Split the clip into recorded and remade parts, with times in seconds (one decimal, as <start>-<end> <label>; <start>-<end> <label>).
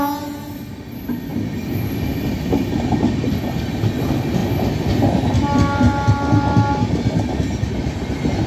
0.0-1.3 recorded; 1.3-2.7 remade; 2.7-8.5 recorded